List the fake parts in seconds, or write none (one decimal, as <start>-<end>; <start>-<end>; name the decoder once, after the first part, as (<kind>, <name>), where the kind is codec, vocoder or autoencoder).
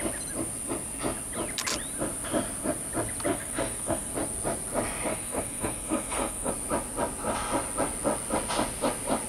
3.3-4.1 (codec, SNAC); 5.1-6.5